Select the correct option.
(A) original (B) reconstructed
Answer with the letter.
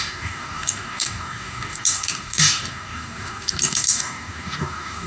B